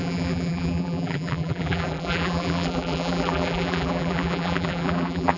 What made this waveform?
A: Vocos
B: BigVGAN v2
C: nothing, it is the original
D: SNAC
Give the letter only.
B